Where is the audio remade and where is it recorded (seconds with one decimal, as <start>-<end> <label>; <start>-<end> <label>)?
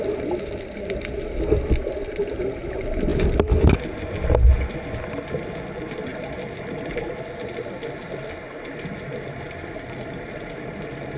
0.0-11.2 recorded